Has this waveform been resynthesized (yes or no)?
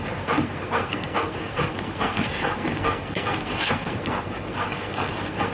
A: yes